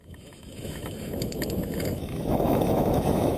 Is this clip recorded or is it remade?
remade